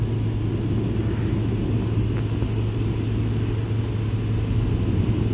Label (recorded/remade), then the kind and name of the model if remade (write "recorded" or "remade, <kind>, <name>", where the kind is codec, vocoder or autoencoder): recorded